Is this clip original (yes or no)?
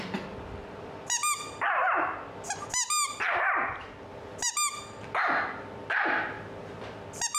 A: yes